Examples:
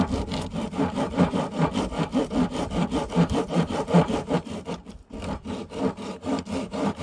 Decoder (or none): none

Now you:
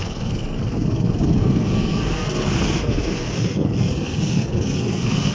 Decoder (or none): codec, SNAC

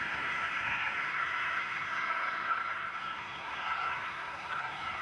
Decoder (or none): codec, SNAC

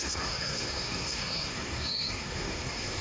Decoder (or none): codec, SNAC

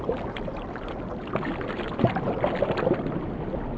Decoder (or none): none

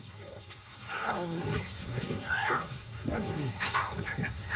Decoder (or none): codec, SNAC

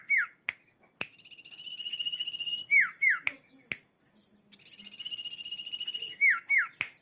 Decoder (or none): none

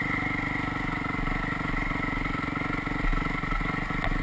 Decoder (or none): none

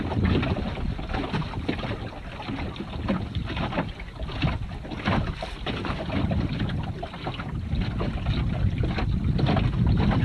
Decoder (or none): none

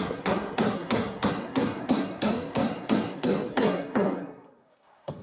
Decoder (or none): codec, SNAC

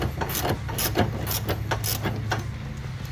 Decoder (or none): none